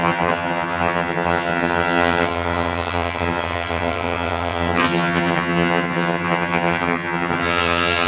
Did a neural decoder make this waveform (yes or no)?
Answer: yes